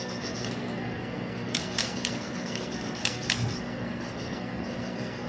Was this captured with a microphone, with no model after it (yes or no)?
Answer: no